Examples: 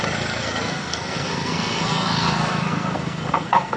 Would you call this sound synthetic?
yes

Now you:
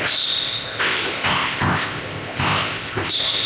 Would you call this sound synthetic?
yes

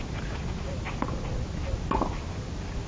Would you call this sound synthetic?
no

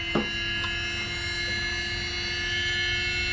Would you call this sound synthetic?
no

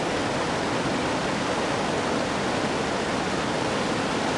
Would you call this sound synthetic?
no